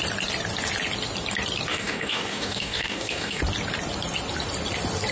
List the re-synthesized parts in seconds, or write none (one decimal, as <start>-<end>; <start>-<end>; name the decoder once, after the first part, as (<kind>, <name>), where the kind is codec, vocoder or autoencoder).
1.7-3.4 (codec, DAC)

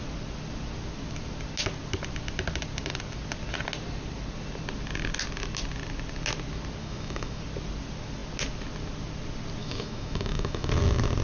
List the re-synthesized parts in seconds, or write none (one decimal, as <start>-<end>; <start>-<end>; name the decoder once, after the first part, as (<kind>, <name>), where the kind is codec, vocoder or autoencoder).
6.8-7.4 (autoencoder, DAC-VAE); 9.6-10.7

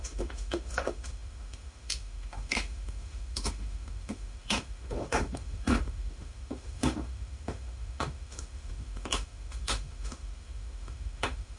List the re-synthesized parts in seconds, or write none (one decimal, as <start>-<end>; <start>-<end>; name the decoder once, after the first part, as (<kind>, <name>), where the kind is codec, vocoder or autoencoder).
0.0-11.6 (autoencoder, DAC-VAE)

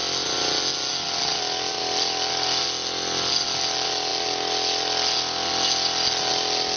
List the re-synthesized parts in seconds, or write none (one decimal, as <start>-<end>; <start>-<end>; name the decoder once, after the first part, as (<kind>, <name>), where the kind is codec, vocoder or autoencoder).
none

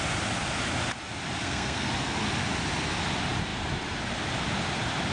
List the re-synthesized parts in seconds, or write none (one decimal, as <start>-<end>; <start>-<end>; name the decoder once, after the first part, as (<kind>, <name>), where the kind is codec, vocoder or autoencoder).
1.4-1.9 (codec, SNAC)

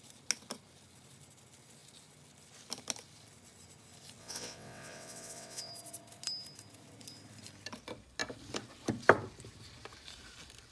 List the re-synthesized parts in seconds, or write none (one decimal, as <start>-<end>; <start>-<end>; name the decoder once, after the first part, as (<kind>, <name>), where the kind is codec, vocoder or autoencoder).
4.2-5.7 (vocoder, WaveNeXt)

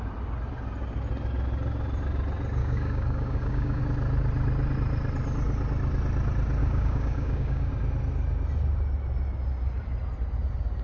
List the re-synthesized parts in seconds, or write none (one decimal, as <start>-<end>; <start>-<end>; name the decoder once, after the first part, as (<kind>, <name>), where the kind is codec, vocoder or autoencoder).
2.6-3.8 (codec, DAC); 6.6-7.7

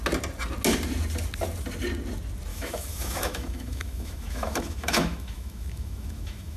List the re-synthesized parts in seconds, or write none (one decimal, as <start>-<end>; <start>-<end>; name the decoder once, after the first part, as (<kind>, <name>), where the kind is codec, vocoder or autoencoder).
2.5-6.6 (autoencoder, DAC-VAE)